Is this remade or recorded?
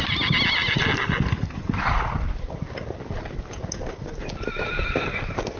recorded